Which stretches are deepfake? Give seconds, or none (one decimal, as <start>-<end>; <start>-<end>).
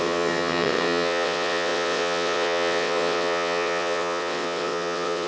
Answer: 0.0-5.3